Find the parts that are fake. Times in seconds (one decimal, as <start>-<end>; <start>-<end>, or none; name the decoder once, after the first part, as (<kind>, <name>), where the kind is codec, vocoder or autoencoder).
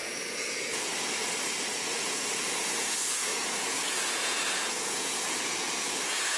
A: 0.0-0.9 (vocoder, Vocos); 1.7-6.4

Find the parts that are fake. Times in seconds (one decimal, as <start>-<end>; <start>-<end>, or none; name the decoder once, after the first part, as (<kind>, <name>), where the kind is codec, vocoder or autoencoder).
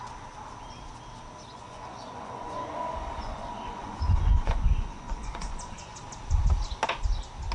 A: 1.5-6.0 (vocoder, Vocos)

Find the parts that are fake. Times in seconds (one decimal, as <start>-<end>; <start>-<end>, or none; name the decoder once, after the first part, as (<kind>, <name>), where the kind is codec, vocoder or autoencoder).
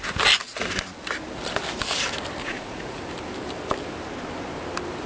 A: 2.4-3.0 (vocoder, Vocos)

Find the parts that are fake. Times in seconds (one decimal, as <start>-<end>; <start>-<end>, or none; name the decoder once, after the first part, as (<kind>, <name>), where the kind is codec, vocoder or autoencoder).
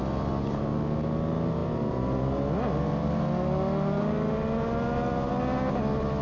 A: none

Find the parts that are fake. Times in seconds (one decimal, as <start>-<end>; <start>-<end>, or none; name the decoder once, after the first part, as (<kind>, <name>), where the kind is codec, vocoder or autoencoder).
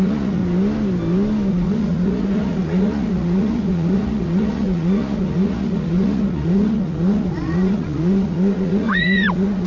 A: 0.0-0.4 (vocoder, Vocos); 1.5-9.7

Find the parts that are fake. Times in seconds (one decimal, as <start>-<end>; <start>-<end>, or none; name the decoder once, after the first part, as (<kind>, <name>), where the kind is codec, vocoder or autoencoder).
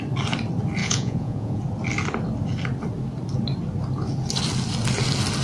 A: 0.8-1.6 (vocoder, Vocos)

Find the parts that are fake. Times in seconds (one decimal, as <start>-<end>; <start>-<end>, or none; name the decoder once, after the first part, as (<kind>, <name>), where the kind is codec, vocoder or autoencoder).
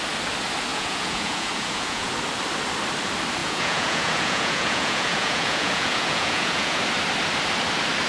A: 0.7-2.1 (vocoder, Vocos); 3.4-6.8